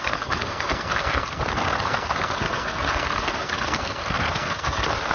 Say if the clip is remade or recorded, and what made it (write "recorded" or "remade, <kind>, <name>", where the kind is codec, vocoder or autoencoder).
remade, codec, SNAC